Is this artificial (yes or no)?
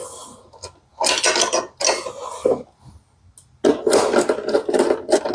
no